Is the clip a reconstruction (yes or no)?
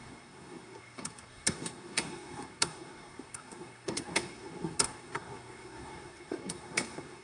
yes